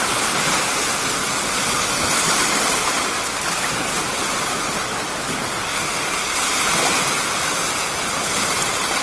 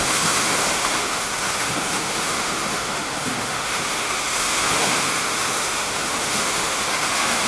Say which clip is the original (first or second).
first